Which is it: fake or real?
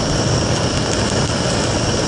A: real